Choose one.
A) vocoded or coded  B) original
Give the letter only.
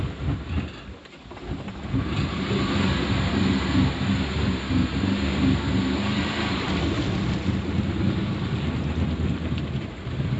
B